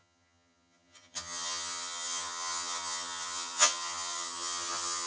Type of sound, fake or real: fake